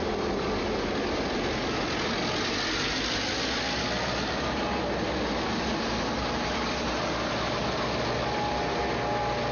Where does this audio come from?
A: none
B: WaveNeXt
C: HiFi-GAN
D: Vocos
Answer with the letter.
A